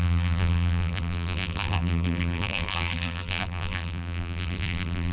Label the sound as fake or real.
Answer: fake